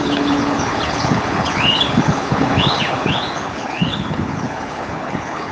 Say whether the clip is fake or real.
fake